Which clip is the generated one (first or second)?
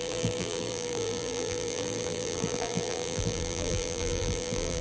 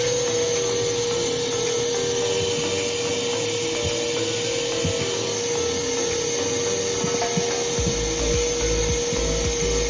first